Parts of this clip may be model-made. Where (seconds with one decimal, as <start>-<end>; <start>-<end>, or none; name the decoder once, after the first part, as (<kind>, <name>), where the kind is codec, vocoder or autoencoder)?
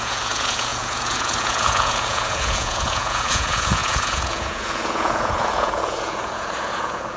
0.0-7.2 (vocoder, Vocos)